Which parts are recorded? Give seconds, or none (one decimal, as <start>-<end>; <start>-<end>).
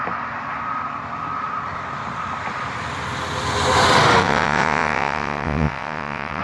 0.0-4.2